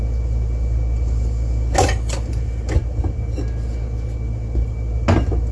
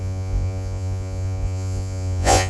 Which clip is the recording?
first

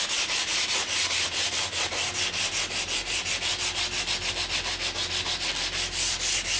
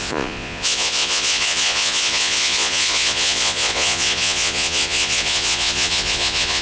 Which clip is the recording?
first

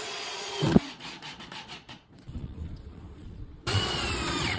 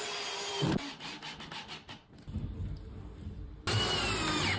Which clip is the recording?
second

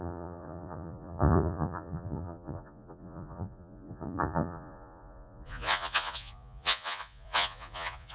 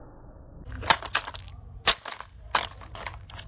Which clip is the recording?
second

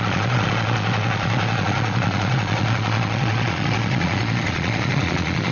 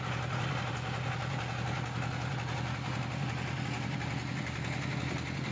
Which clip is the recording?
second